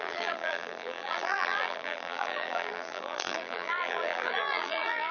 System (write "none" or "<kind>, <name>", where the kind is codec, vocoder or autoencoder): vocoder, BigVGAN v2